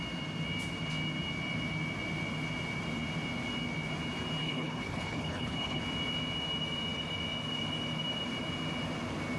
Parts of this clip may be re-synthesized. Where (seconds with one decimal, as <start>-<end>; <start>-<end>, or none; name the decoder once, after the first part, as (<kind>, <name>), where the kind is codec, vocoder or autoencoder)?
4.4-5.8 (codec, HILCodec)